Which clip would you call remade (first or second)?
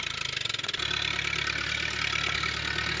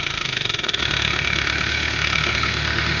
second